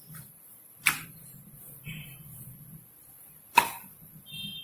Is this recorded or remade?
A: recorded